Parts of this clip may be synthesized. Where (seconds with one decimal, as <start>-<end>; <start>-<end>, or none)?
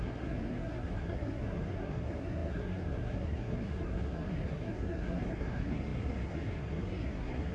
0.0-7.5